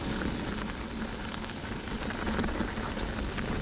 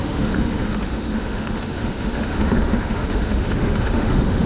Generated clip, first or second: second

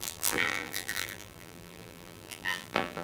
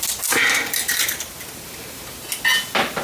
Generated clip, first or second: first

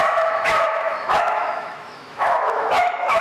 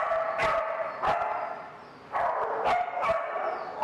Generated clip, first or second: first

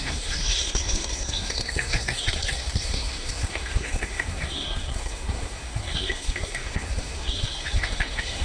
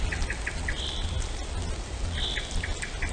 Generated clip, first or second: first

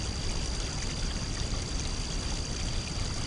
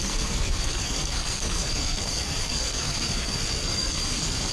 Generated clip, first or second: second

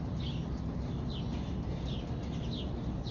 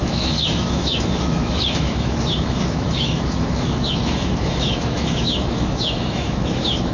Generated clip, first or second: second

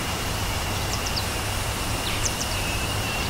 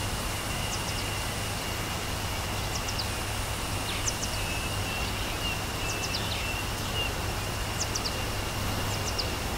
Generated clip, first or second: first